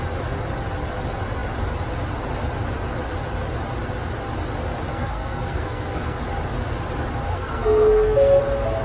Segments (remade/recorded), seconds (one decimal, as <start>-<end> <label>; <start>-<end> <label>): 0.0-4.9 recorded; 4.9-6.2 remade; 6.2-7.3 recorded; 7.3-8.4 remade; 8.4-8.8 recorded